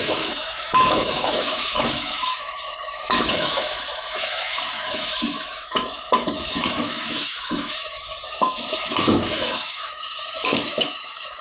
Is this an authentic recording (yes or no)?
no